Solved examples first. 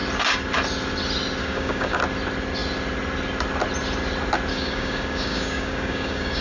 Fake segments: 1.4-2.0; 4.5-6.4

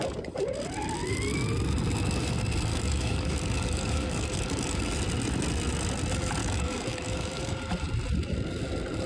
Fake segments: 2.7-4.8; 6.4-7.6

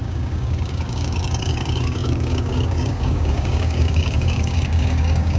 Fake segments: 0.0-5.4

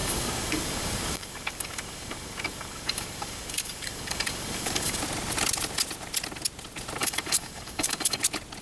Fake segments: 0.0-5.0; 7.0-8.2

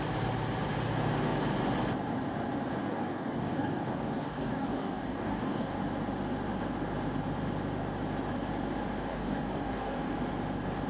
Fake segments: 2.8-5.8; 9.1-10.1

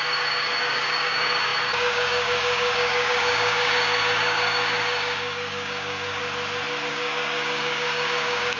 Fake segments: 0.0-6.2; 6.9-8.6

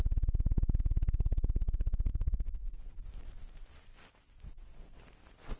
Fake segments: 2.1-2.7

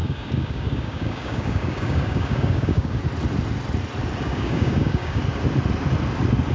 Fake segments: 0.0-3.0; 4.2-5.2